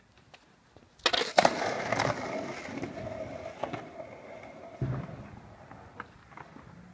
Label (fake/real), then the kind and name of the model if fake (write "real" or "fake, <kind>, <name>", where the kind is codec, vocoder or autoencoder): real